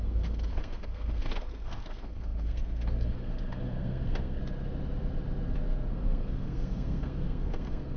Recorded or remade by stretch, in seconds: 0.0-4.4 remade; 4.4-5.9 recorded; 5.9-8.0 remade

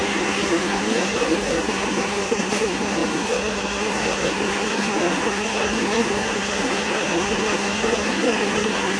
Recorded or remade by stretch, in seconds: 0.0-9.0 remade